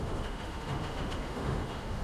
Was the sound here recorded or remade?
remade